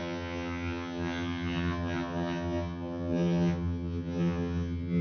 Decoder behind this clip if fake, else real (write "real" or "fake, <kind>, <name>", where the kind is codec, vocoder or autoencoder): fake, vocoder, HiFi-GAN